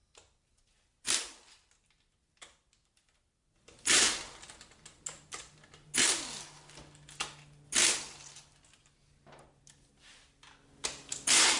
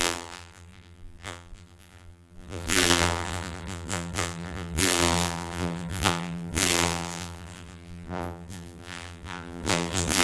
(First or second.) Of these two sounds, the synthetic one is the second